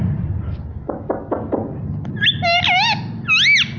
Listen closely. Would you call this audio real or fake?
real